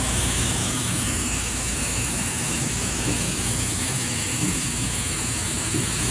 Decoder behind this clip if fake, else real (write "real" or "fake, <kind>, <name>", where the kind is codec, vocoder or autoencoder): fake, autoencoder, DAC-VAE